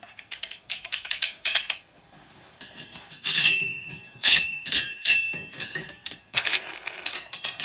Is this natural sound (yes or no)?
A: no